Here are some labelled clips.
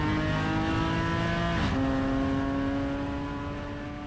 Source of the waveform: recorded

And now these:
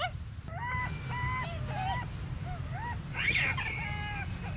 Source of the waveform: recorded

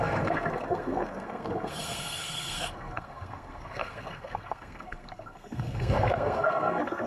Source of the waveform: remade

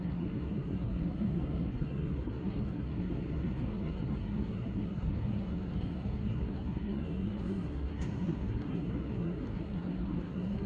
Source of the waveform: remade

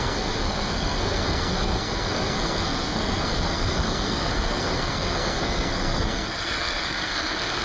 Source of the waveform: remade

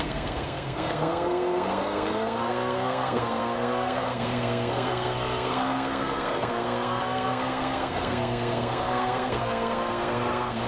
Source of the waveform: remade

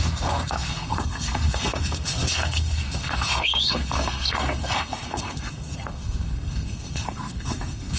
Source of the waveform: remade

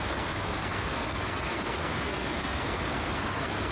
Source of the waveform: remade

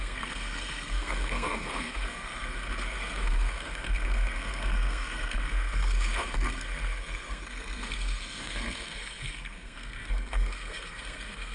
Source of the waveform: remade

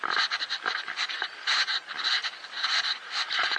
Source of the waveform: recorded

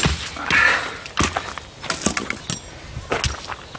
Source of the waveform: recorded